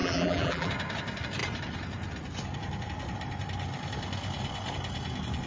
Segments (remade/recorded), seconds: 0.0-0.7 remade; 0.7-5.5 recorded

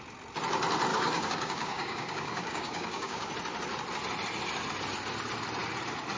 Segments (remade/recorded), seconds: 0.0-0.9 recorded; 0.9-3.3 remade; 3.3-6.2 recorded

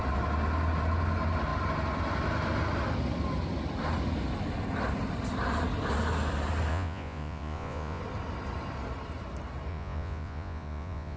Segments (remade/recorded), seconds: 0.0-6.7 recorded; 6.7-8.0 remade; 8.0-9.7 recorded; 9.7-11.2 remade

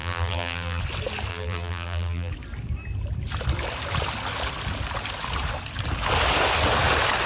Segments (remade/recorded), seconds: 0.0-0.8 remade; 0.8-1.3 recorded; 1.3-2.3 remade; 2.3-7.3 recorded

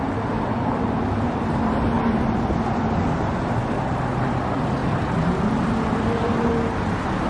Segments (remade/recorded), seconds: 0.0-4.8 recorded; 4.8-6.5 remade; 6.5-7.3 recorded

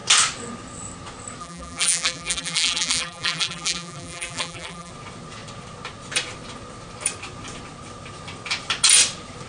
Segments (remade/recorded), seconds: 0.0-1.4 recorded; 1.4-4.9 remade; 4.9-9.5 recorded

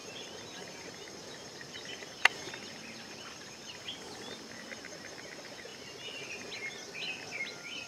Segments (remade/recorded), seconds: 0.0-7.9 recorded